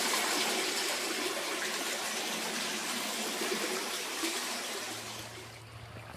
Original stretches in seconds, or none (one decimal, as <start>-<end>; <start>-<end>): 0.0-6.2